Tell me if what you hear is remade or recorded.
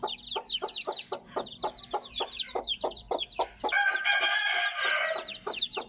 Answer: recorded